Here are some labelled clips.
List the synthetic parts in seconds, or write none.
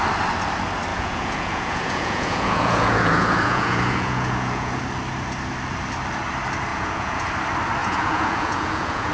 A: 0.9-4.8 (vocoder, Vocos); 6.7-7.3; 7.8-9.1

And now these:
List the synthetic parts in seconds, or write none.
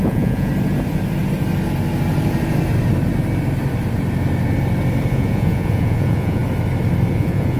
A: 0.0-0.5 (vocoder, Vocos); 5.1-6.4; 7.1-7.6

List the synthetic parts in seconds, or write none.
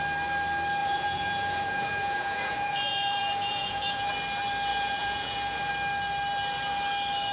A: 0.8-4.1 (vocoder, Vocos); 4.7-5.7